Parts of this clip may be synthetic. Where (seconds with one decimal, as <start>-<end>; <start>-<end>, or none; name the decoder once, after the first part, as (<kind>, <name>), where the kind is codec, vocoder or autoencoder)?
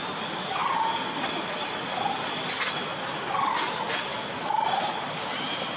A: none